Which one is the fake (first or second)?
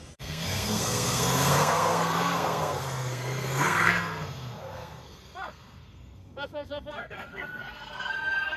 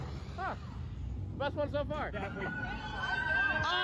first